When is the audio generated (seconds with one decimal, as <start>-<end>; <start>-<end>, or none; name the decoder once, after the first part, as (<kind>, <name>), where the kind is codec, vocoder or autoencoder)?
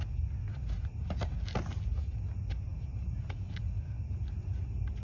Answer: none